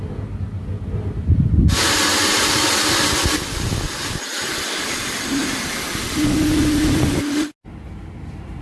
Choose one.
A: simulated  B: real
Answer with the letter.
B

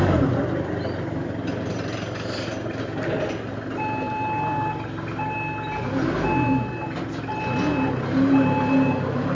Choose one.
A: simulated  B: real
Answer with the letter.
B